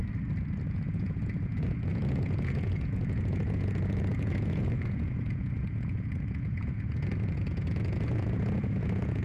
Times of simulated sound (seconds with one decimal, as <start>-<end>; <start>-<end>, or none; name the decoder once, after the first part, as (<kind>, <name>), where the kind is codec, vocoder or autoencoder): 0.6-9.2 (vocoder, Vocos)